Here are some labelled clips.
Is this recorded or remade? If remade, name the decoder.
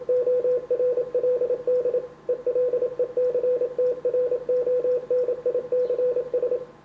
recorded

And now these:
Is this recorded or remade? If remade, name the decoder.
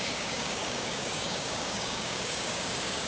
remade, codec, DAC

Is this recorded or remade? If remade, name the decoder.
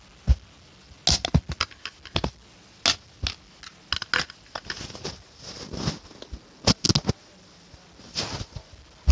recorded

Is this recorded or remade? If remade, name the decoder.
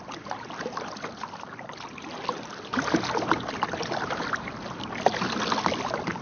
recorded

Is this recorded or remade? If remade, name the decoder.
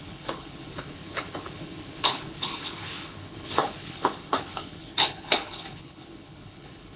remade, codec, HILCodec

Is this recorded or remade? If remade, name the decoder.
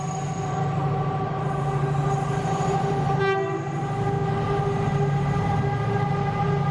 recorded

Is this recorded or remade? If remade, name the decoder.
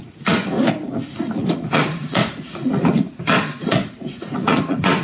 remade, vocoder, Vocos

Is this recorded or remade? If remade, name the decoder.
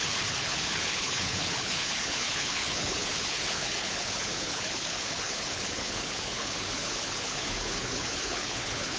remade, codec, HILCodec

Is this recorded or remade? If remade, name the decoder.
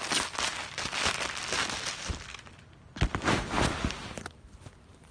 recorded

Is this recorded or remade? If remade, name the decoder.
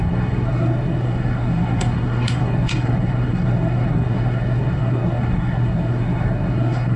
remade, codec, SNAC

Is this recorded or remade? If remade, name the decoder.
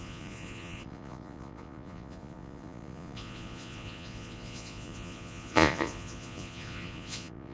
remade, vocoder, Vocos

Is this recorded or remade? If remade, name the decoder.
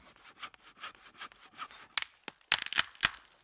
recorded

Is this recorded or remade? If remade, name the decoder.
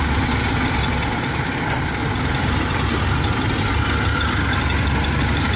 recorded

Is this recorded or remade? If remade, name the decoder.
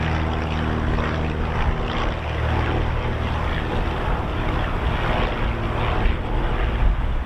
recorded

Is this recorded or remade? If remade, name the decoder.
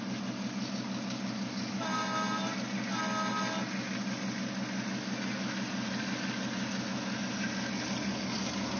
recorded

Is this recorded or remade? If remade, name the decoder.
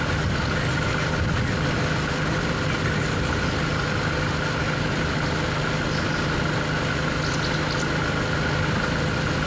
recorded